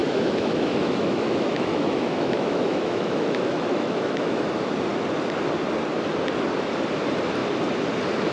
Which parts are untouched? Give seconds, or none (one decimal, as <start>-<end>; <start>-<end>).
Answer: 4.4-8.3